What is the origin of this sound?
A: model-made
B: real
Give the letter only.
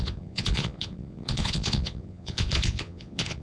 A